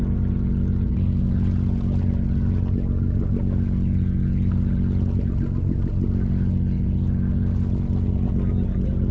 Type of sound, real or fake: real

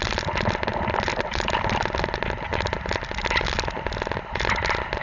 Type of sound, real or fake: real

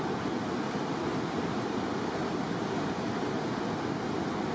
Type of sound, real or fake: real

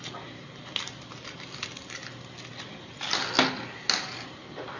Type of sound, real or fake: real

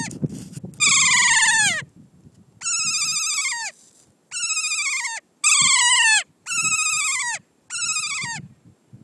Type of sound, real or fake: real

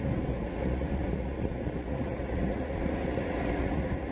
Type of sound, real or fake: fake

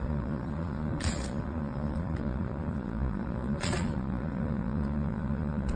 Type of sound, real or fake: fake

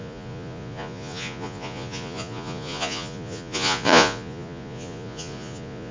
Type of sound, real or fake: fake